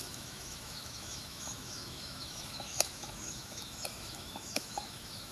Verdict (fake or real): fake